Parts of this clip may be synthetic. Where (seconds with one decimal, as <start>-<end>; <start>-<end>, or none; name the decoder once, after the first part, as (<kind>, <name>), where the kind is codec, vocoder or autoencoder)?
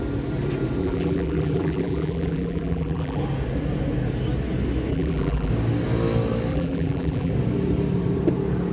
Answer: 0.8-3.2 (vocoder, BigVGAN v2); 4.9-5.5; 6.5-7.3